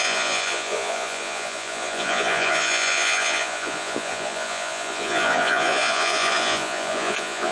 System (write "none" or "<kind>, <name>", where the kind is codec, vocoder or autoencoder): vocoder, Vocos